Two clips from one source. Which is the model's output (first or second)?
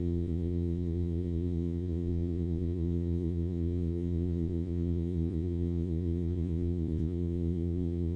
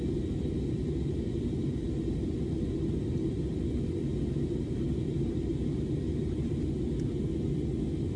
first